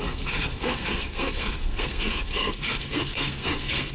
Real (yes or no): no